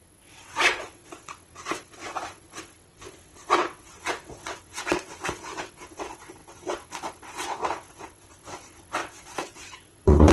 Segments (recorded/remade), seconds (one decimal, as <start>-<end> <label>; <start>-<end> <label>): 0.0-10.3 remade